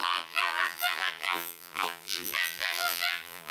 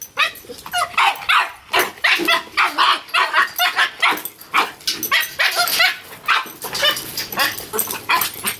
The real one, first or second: second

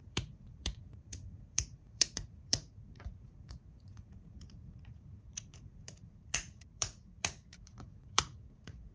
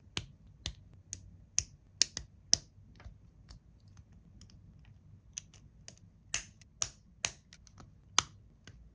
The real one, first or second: second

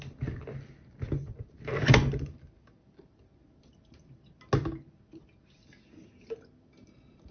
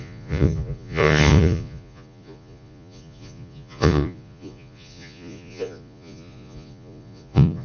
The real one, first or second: first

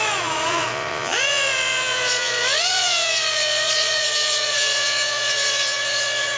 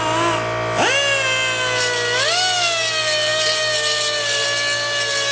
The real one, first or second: second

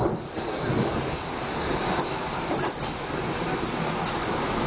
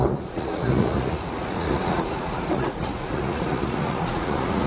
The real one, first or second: first